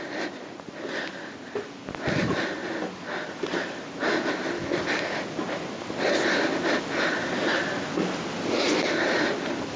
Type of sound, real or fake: real